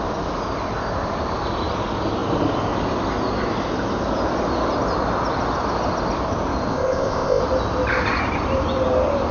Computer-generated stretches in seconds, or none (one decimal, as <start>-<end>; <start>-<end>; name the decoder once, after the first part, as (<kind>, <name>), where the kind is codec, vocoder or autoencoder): 6.7-7.4 (codec, ZipCodec)